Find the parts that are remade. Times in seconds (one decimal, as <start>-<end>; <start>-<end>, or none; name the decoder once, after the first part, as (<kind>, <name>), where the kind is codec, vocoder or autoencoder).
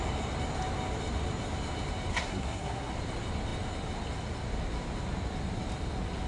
2.1-2.9 (codec, SNAC)